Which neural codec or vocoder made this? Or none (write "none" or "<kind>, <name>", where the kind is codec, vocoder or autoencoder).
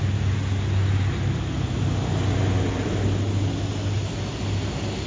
none